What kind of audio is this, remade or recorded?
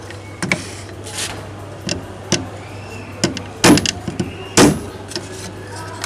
recorded